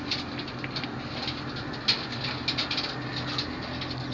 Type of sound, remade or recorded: recorded